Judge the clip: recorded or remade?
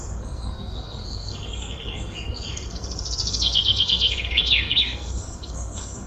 remade